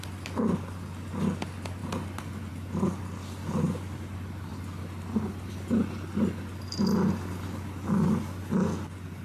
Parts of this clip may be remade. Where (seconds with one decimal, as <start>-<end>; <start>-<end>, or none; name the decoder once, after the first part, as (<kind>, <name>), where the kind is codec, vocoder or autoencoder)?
none